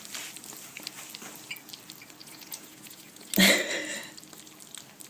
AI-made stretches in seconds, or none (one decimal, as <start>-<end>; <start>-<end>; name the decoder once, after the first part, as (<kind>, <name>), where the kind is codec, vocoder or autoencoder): 2.2-3.3 (vocoder, Vocos)